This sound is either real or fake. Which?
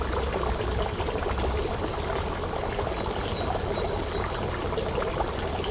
real